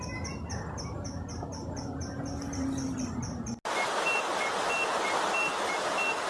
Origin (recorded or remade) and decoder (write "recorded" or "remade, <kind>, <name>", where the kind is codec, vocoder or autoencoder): recorded